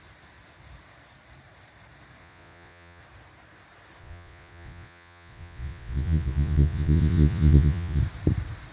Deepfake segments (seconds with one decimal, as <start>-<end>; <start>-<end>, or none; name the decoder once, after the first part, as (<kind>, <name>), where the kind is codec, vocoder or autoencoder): 2.2-3.0 (vocoder, Vocos); 4.0-8.0